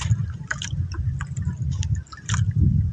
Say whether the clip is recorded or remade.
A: recorded